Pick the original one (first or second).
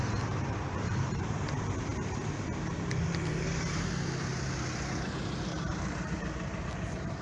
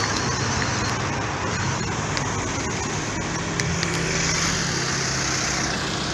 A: second